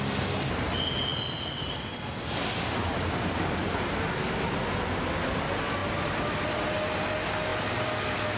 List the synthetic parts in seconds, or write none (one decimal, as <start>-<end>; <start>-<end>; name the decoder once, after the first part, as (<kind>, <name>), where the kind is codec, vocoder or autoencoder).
none